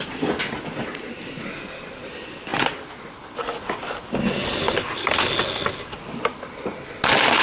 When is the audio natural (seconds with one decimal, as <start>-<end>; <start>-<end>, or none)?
0.0-7.4